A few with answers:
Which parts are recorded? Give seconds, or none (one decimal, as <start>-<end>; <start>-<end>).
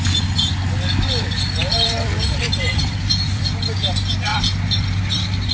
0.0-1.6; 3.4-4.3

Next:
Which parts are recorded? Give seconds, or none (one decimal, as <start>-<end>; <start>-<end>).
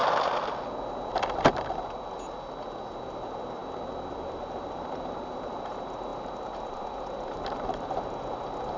0.0-3.0; 3.6-4.1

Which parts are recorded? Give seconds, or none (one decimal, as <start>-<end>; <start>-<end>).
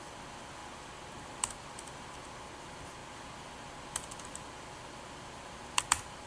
0.0-6.3